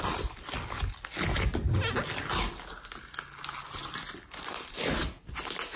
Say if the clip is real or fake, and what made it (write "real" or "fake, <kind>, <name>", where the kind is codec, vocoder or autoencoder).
real